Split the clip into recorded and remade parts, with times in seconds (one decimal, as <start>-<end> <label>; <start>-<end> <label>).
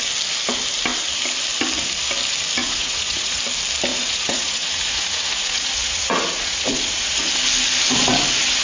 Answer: 0.0-2.6 recorded; 2.6-3.4 remade; 3.4-3.9 recorded; 3.9-7.3 remade; 7.3-8.6 recorded